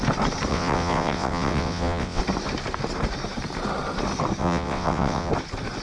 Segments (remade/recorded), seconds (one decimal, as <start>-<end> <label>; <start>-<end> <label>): 0.0-0.5 recorded; 0.5-2.2 remade; 2.2-4.4 recorded; 4.4-5.3 remade; 5.3-5.8 recorded

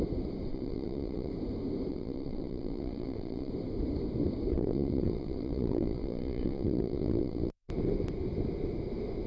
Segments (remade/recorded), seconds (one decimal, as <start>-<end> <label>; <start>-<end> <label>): 0.0-0.5 recorded; 0.5-1.3 remade; 1.3-1.9 recorded; 1.9-3.5 remade; 3.5-4.5 recorded; 4.5-7.7 remade; 7.7-9.3 recorded